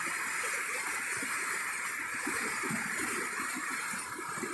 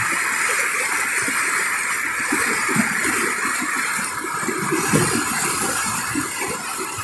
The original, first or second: second